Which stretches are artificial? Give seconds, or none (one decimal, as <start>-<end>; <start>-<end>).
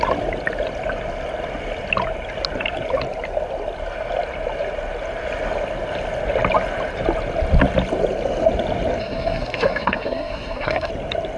9.0-10.9